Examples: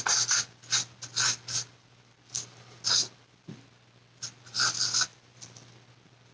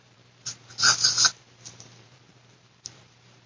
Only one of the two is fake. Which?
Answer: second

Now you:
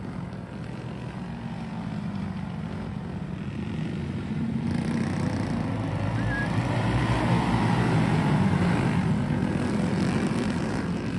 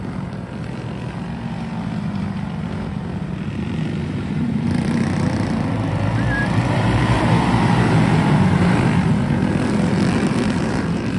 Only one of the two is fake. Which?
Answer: second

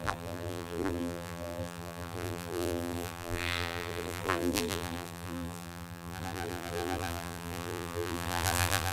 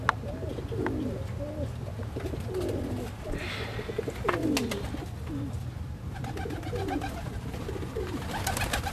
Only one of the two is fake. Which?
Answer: first